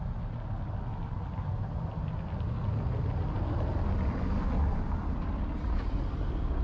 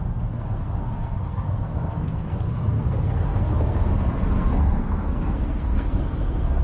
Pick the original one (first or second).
first